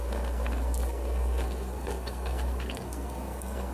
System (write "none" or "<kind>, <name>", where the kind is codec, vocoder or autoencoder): codec, SNAC